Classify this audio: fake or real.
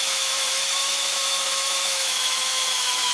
fake